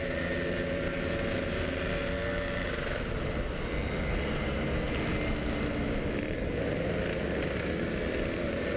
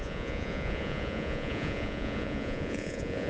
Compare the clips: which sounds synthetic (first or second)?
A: second